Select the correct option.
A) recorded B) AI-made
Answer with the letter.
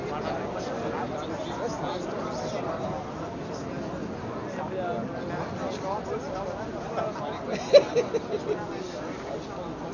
A